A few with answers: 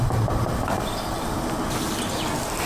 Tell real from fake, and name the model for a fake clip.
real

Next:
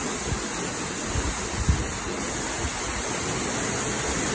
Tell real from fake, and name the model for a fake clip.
real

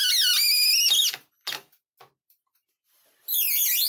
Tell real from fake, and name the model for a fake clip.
real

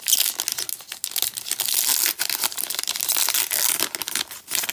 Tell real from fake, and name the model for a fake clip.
real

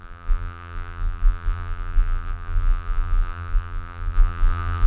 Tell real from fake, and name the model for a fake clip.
fake, vocoder, BigVGAN v2